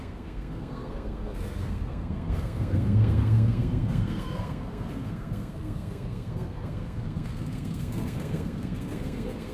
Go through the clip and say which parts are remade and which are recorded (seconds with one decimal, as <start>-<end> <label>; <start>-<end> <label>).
0.0-9.5 remade